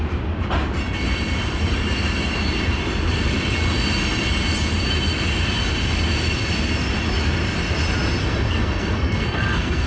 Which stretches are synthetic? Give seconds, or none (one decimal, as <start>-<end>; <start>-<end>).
8.2-9.9